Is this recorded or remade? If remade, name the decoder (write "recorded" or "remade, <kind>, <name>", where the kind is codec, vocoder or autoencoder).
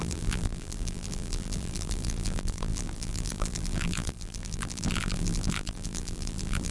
remade, vocoder, BigVGAN v2